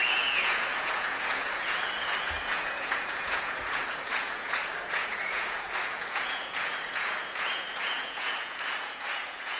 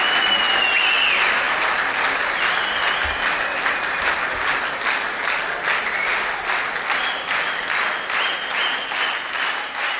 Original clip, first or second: second